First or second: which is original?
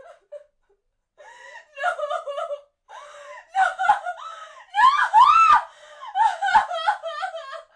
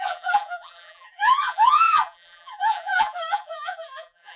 first